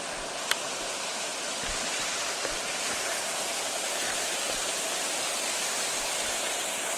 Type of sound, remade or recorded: recorded